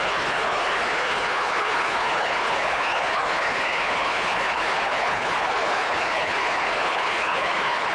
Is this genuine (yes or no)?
no